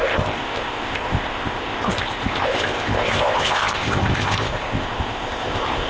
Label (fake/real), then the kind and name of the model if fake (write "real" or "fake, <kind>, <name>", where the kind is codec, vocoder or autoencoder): fake, codec, ZipCodec